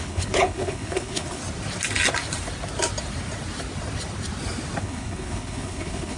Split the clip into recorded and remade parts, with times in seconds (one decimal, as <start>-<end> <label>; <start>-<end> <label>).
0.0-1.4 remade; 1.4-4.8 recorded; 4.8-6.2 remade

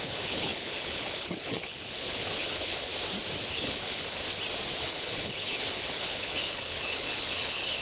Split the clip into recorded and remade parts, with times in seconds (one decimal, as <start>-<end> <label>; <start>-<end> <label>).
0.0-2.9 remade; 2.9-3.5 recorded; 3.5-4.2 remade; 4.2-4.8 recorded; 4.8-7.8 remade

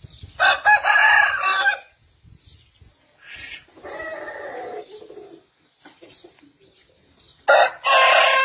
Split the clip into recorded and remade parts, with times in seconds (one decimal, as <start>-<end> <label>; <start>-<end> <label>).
0.0-8.4 recorded

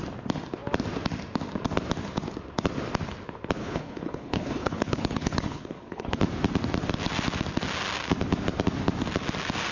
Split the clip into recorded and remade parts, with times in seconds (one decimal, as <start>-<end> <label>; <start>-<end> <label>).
0.0-3.6 recorded; 3.6-6.2 remade; 6.2-9.7 recorded

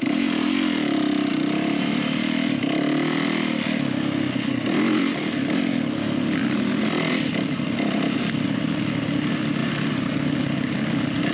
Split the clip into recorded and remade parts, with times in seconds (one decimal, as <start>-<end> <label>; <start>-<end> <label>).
0.0-11.3 recorded

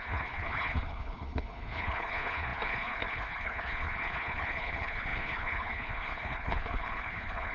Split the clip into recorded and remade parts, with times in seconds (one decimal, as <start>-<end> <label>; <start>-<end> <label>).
0.0-7.5 remade

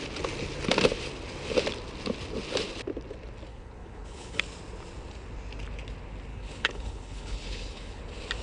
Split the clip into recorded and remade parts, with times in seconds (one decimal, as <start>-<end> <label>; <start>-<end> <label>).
0.0-3.5 recorded; 3.5-4.4 remade; 4.4-6.3 recorded; 6.3-8.0 remade; 8.0-8.4 recorded